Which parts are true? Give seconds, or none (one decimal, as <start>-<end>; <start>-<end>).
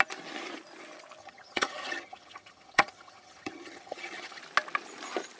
0.0-1.2; 4.4-5.4